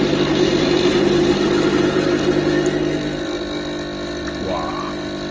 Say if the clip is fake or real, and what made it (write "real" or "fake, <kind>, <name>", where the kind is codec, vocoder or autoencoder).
real